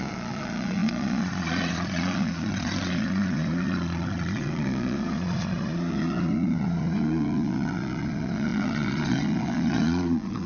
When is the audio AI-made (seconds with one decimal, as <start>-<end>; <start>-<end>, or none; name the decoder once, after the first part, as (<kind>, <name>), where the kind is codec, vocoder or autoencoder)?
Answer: 0.0-10.5 (vocoder, Vocos)